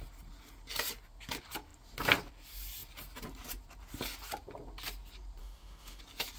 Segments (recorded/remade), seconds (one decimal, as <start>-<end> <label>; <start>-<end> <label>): 0.0-5.4 recorded; 5.4-6.0 remade; 6.0-6.4 recorded